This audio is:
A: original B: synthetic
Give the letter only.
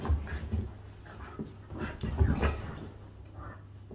A